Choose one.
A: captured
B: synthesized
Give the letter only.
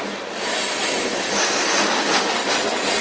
A